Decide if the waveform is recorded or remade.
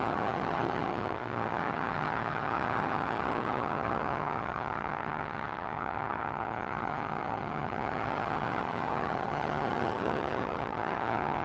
remade